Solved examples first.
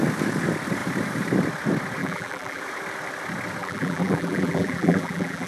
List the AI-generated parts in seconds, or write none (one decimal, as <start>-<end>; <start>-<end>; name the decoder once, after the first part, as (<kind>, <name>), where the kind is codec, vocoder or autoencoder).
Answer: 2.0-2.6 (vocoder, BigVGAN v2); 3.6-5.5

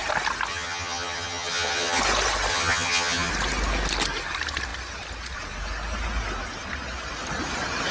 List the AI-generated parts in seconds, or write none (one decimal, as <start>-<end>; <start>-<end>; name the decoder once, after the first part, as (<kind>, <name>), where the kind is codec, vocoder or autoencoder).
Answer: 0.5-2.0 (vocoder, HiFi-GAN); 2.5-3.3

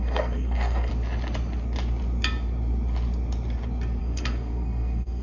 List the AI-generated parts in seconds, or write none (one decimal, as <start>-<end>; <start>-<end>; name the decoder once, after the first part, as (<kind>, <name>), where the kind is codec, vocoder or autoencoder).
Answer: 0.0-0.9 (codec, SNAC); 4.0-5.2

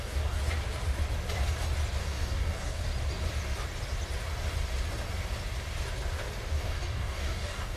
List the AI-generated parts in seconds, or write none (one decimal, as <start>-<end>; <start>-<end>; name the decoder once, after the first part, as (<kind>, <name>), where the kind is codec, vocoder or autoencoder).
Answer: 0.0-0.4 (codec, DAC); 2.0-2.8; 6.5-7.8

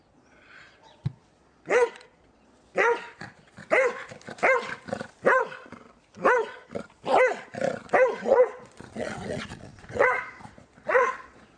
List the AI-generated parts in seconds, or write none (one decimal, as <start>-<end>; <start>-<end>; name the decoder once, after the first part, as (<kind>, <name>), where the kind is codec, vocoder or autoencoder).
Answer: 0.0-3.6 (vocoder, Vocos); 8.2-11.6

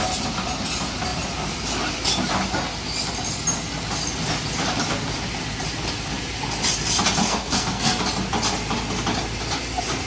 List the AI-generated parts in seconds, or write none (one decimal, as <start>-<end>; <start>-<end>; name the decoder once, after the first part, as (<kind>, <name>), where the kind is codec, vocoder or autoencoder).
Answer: 7.2-8.0 (codec, SNAC)

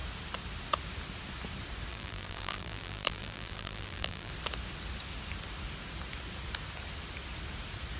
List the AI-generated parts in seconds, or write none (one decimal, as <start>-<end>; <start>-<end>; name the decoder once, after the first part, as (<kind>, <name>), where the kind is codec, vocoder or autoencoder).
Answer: 1.9-4.3 (vocoder, BigVGAN v2)

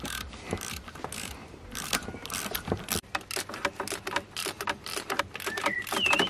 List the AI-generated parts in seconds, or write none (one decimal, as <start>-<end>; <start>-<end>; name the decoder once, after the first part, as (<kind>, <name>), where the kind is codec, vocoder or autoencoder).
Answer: 1.4-5.2 (vocoder, BigVGAN v2)